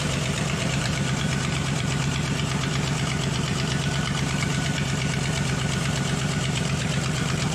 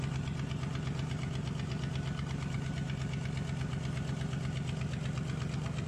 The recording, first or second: second